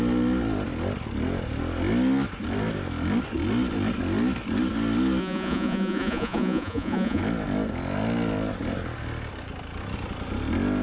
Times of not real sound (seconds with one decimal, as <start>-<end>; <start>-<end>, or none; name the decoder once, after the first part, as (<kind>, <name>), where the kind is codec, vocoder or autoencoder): 5.2-7.2 (vocoder, Vocos)